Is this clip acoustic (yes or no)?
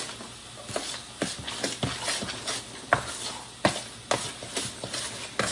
yes